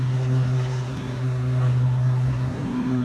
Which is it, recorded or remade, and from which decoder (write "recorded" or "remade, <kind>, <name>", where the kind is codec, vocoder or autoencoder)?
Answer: remade, codec, SNAC